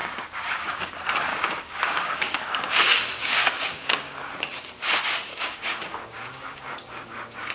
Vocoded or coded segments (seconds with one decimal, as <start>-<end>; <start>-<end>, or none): 0.0-0.9; 1.3-2.7; 3.2-4.7; 5.3-7.5